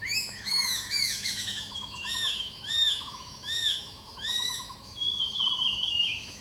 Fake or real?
fake